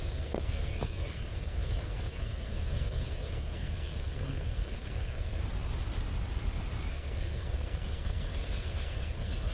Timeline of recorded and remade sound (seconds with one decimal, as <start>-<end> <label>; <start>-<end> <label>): 0.0-5.4 remade; 5.4-6.9 recorded; 6.9-9.5 remade